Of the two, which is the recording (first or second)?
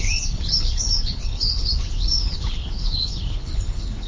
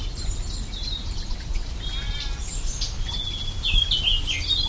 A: second